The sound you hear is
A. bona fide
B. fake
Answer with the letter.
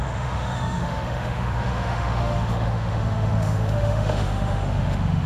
B